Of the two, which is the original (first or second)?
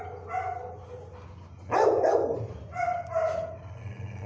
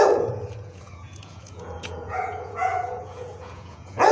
first